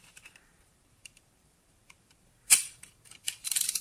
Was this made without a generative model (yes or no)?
no